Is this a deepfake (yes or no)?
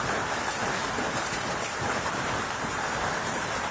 yes